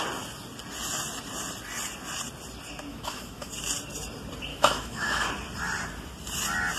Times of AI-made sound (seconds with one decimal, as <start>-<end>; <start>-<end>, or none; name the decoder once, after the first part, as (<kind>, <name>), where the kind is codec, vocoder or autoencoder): 2.9-3.5 (autoencoder, DAC-VAE); 4.5-5.3